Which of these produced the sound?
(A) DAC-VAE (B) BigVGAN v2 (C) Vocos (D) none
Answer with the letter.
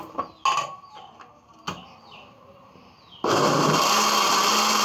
D